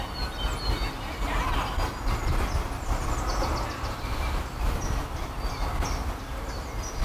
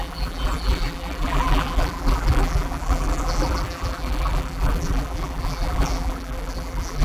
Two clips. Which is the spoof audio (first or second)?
second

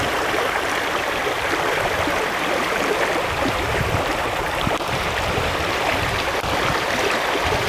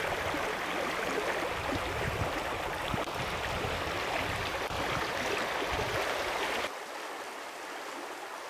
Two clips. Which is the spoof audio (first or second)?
first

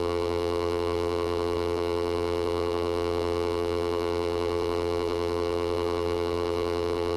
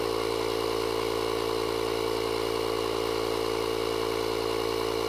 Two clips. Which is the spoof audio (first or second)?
first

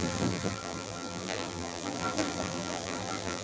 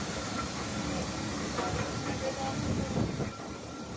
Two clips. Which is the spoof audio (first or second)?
first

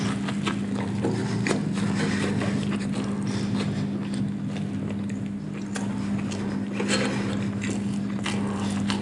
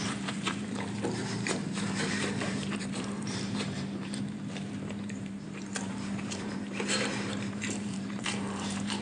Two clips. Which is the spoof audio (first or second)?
second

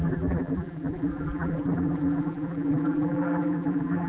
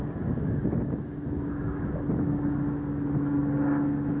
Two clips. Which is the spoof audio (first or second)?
first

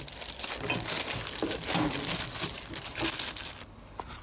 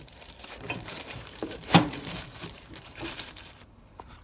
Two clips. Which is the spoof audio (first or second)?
second